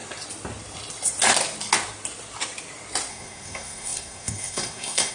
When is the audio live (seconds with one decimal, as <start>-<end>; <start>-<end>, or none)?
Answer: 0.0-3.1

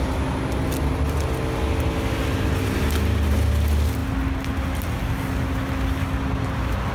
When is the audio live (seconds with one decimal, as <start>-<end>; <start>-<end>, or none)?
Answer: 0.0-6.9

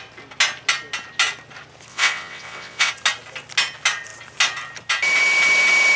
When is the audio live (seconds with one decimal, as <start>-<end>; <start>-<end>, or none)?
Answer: 0.0-1.9; 2.9-6.0

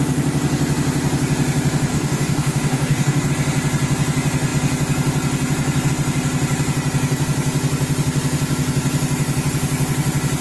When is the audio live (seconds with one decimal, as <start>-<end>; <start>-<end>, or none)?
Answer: 0.0-1.9; 3.3-10.4